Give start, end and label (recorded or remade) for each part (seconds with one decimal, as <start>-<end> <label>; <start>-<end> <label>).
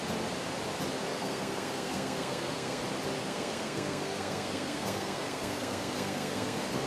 0.0-1.1 recorded; 1.1-2.8 remade; 2.8-3.2 recorded; 3.2-6.9 remade